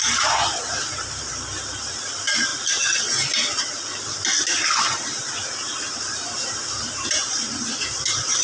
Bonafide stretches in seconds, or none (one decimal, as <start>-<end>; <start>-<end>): 2.5-4.8